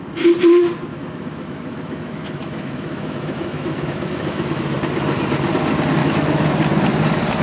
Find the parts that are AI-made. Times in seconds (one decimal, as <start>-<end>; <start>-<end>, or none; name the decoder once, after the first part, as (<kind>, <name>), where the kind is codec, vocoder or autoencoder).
0.9-4.6 (autoencoder, DAC-VAE); 6.0-6.5